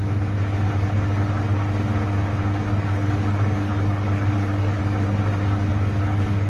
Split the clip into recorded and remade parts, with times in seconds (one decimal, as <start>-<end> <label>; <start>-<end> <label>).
0.0-2.7 recorded; 2.7-4.8 remade; 4.8-5.7 recorded; 5.7-6.5 remade